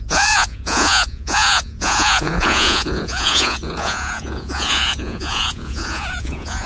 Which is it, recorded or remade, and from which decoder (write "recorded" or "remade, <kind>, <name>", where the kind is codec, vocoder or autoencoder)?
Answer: remade, vocoder, Vocos